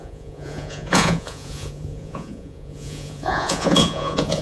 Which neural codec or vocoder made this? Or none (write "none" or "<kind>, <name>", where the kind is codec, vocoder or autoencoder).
vocoder, Vocos